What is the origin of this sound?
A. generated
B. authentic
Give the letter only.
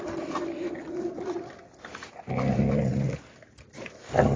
B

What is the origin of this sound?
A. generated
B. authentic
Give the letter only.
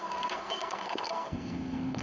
A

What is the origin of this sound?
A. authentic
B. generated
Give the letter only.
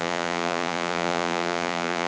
B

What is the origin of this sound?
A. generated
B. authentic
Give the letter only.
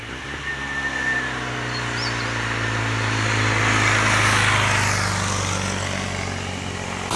B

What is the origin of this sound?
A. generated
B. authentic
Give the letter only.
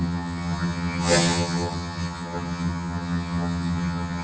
A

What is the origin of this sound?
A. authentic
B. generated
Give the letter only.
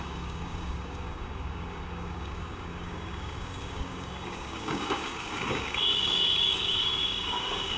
B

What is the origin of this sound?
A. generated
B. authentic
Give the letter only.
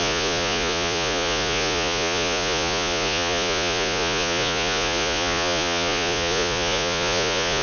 A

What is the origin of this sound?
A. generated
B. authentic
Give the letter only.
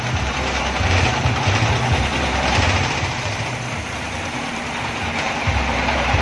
A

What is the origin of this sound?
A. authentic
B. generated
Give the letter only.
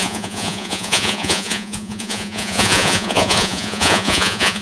B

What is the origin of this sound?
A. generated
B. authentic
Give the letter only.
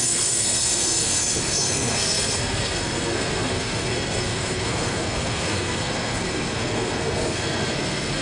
A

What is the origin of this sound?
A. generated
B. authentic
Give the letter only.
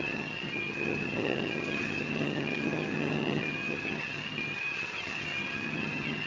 A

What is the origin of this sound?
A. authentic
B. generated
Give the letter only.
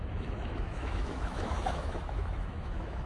B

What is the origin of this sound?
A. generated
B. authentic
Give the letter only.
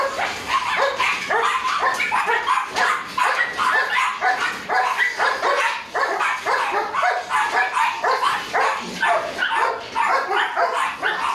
B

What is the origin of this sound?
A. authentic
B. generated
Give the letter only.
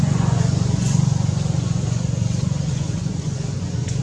B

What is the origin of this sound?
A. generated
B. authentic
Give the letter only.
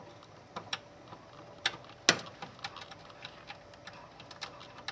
B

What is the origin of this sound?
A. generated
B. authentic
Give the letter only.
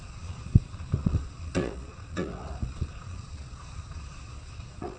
A